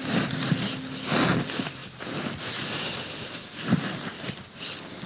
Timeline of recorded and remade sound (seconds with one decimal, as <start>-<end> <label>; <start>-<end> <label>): 0.0-5.1 recorded